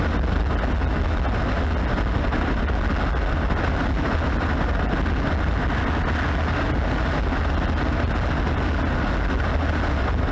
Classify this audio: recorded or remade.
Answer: recorded